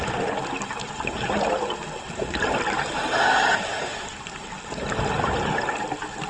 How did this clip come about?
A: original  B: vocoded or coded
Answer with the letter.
A